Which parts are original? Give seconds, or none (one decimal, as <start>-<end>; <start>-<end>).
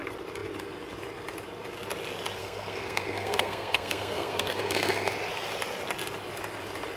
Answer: 0.0-2.4; 5.1-7.0